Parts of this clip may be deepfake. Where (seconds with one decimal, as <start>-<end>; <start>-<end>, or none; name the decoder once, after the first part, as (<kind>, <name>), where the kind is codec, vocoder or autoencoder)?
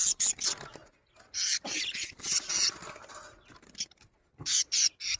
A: none